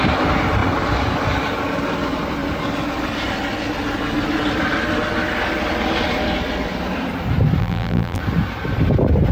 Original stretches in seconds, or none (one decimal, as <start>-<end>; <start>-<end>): 0.0-7.6; 8.2-9.3